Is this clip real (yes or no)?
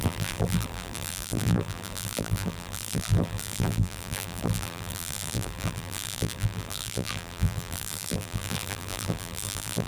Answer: no